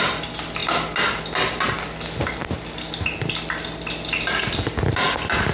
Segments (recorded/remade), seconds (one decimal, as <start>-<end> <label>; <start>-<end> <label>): 0.0-5.5 recorded